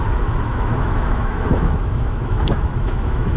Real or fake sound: fake